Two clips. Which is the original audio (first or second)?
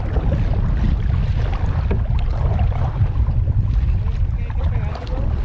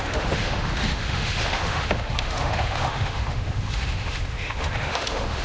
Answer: first